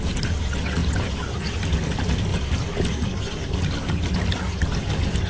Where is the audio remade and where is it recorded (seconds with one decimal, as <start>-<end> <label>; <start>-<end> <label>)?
0.0-5.3 recorded